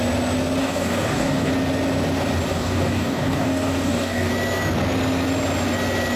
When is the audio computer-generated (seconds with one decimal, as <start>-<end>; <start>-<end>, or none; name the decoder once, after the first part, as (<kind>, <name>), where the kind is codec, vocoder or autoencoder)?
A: 0.6-1.5 (codec, DAC); 2.5-4.3